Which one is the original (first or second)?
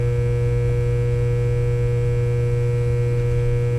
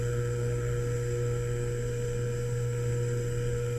first